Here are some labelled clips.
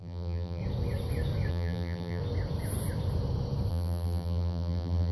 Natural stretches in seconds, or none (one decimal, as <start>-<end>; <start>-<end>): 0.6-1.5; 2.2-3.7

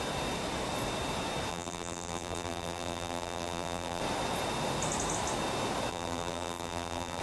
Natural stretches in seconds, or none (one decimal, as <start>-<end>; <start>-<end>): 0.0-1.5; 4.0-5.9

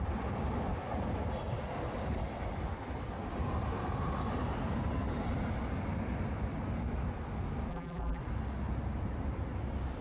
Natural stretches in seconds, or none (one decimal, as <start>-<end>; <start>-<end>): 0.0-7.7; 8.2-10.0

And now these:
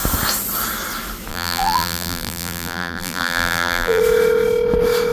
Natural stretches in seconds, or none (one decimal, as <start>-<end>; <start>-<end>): 0.0-1.3; 4.0-5.1

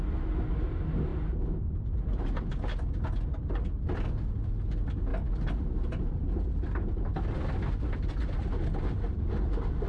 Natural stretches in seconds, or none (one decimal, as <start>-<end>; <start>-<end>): 0.0-9.9

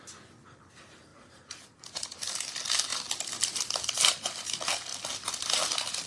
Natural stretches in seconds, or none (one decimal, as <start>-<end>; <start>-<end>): 0.0-1.1; 2.2-4.9; 5.5-6.1